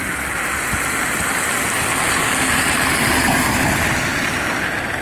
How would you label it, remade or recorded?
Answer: recorded